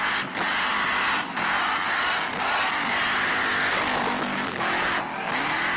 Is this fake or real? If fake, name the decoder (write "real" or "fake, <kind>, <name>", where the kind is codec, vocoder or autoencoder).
real